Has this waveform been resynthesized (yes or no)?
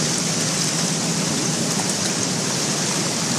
yes